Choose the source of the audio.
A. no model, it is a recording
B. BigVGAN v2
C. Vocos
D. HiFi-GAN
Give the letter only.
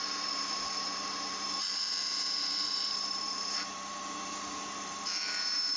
B